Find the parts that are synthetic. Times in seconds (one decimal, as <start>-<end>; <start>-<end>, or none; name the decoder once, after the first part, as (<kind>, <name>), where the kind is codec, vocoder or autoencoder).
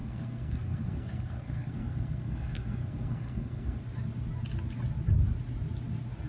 0.0-3.8 (codec, SNAC)